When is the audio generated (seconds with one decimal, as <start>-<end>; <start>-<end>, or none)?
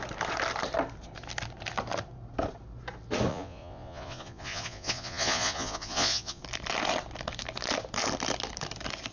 3.3-6.4